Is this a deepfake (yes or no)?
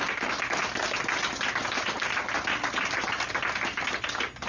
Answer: no